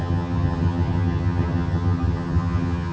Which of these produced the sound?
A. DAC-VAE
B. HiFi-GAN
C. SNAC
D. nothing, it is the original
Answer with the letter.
B